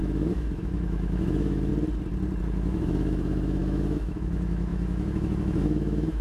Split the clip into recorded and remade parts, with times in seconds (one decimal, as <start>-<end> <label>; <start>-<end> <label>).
0.0-1.7 remade; 1.7-2.4 recorded; 2.4-6.2 remade